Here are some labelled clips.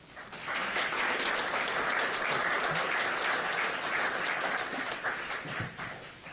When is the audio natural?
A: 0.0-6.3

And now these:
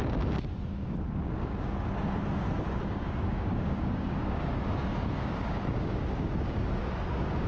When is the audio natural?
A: 2.2-2.7

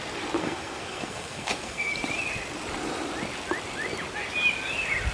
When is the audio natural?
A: 0.0-0.4; 1.9-5.1

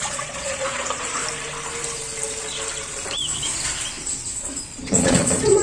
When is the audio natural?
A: 1.2-4.6

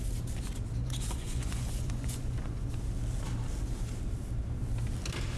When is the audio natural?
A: 0.0-0.8; 2.7-5.4

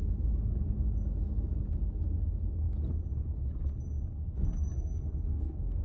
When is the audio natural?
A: 0.0-4.2